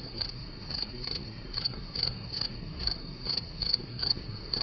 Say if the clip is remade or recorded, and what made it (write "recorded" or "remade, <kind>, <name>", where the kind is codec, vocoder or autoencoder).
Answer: remade, codec, SNAC